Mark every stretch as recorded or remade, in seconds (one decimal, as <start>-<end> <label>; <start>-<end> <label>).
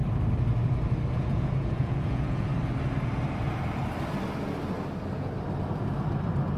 0.0-1.1 recorded; 1.1-2.5 remade; 2.5-6.6 recorded